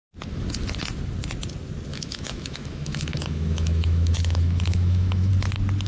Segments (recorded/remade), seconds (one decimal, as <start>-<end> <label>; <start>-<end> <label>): 0.0-1.9 recorded; 1.9-5.3 remade; 5.3-5.9 recorded